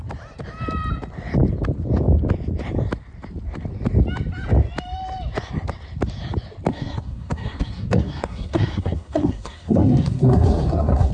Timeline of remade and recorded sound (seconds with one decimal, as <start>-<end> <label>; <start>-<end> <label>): 0.0-6.7 recorded; 6.7-11.1 remade